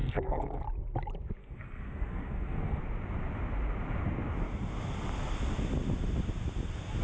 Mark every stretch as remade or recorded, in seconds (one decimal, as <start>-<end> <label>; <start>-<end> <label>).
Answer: 0.0-0.6 remade; 0.6-1.4 recorded; 1.4-2.8 remade; 2.8-7.0 recorded